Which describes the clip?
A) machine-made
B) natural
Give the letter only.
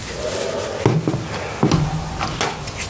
B